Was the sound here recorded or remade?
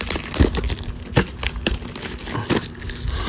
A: recorded